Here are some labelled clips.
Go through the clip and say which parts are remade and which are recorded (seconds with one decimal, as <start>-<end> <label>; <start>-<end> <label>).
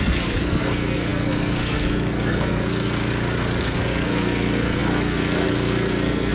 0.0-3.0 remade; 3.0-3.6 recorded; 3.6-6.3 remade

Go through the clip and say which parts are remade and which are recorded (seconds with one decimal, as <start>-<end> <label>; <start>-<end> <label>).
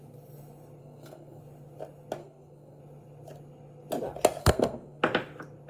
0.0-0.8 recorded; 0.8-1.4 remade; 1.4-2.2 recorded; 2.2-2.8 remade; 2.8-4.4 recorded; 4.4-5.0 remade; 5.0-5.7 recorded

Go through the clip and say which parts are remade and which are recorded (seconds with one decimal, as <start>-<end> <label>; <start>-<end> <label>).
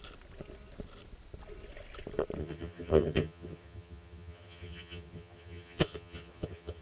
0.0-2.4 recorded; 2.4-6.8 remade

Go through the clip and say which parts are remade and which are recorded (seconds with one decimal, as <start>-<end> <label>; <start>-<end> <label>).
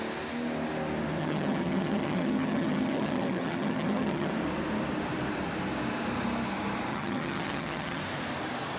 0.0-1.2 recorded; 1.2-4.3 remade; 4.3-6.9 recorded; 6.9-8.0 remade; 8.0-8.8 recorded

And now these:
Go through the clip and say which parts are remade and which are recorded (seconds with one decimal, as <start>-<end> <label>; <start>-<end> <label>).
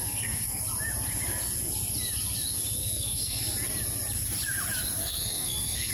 0.0-0.6 remade; 0.6-2.8 recorded; 2.8-3.4 remade; 3.4-5.0 recorded; 5.0-5.9 remade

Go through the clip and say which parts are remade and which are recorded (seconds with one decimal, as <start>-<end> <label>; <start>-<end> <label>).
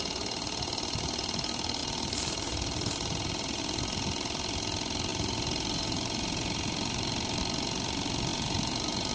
0.0-1.8 recorded; 1.8-3.6 remade; 3.6-5.1 recorded; 5.1-7.4 remade; 7.4-8.3 recorded; 8.3-9.1 remade